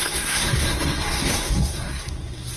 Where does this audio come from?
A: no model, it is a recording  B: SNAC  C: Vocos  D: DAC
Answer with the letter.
B